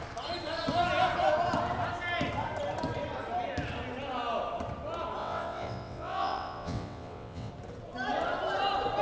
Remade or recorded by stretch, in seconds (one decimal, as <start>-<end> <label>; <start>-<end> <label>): 0.0-5.2 recorded; 5.2-7.5 remade; 7.5-9.0 recorded